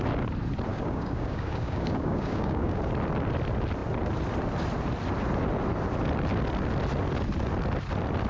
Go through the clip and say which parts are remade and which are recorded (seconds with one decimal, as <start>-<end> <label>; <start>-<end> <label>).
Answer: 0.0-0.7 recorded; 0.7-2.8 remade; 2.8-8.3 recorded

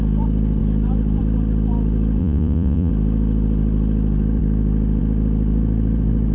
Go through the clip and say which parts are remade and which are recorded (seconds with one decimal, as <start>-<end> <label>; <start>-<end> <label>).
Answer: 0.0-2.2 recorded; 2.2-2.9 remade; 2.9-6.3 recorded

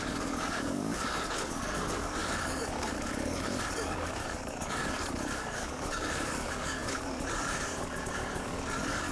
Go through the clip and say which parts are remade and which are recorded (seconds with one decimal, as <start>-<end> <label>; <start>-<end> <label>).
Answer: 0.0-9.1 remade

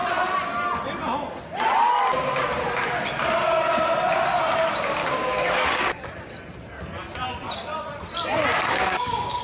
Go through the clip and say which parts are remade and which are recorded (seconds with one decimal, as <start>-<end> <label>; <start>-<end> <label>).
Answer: 0.0-5.0 recorded; 5.0-6.3 remade; 6.3-8.5 recorded; 8.5-9.4 remade

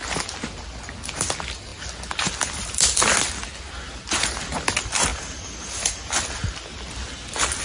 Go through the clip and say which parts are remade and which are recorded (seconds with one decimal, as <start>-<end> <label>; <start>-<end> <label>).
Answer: 0.0-5.1 recorded; 5.1-6.1 remade; 6.1-7.6 recorded

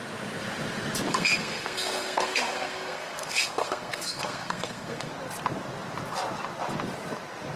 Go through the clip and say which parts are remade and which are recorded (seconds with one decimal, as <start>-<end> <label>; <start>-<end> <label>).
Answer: 0.0-1.1 recorded; 1.1-5.1 remade; 5.1-7.6 recorded

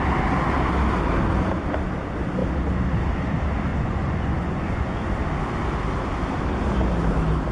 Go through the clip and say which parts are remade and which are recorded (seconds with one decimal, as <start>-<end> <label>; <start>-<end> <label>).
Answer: 0.0-3.7 recorded; 3.7-5.1 remade; 5.1-7.5 recorded